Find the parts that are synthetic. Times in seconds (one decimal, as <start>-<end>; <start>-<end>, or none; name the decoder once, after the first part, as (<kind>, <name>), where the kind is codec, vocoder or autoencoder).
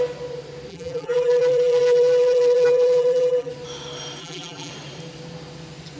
0.7-3.5 (vocoder, BigVGAN v2); 4.2-4.7